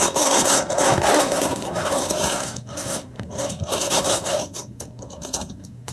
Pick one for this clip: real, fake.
fake